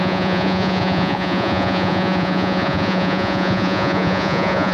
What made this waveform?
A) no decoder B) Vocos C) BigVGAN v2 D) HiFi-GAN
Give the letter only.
B